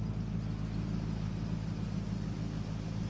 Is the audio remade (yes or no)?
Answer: no